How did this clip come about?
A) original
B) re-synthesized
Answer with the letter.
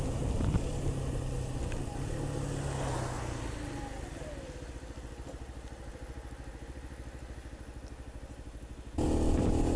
A